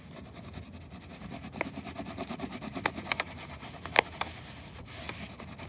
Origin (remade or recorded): recorded